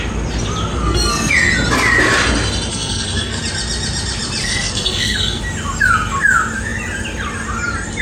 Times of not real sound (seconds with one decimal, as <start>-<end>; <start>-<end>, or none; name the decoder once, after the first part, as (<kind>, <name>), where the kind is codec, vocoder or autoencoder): 0.7-1.3 (codec, SNAC); 2.7-3.4; 4.4-5.4